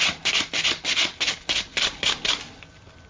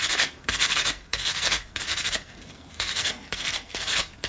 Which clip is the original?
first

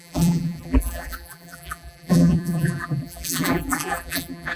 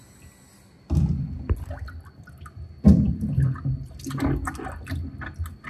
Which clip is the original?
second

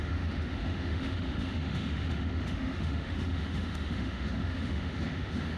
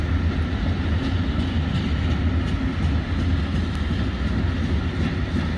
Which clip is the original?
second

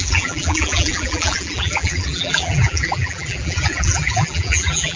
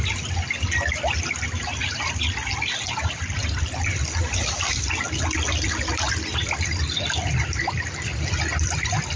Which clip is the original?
second